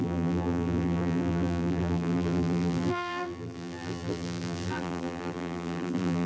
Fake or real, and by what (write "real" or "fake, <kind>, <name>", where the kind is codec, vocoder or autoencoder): fake, vocoder, BigVGAN v2